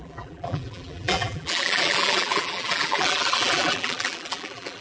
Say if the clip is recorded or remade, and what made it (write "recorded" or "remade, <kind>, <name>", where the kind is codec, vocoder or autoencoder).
remade, vocoder, BigVGAN v2